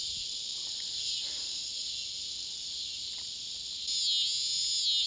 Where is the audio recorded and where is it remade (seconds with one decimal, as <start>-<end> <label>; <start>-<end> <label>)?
0.0-1.6 remade; 1.6-5.1 recorded